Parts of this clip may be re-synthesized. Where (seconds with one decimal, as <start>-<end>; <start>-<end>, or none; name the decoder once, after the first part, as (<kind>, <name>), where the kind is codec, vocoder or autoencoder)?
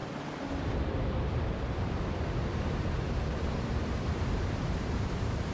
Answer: 1.2-5.5 (vocoder, BigVGAN v2)